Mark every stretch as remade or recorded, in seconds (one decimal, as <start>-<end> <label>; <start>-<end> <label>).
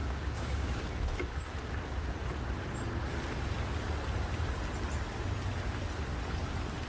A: 0.0-0.8 remade; 0.8-6.9 recorded